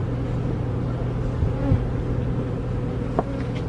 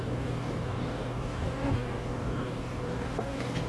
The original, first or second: first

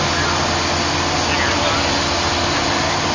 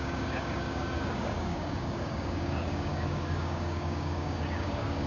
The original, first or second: first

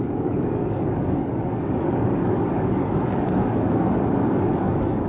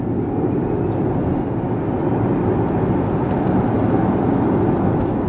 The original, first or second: second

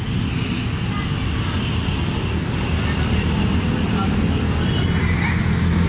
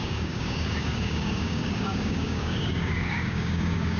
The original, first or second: first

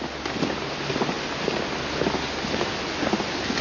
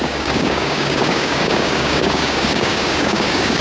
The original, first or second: first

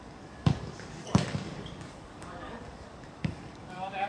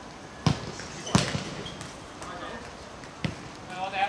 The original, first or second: second